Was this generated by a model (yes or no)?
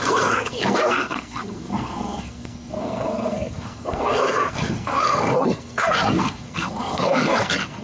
yes